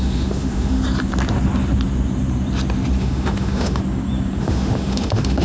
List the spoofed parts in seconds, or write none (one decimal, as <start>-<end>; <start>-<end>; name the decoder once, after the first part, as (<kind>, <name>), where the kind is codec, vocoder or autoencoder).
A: 0.0-0.8 (autoencoder, DAC-VAE); 3.0-3.8; 4.4-5.4